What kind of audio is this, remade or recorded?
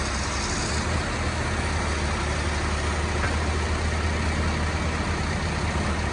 recorded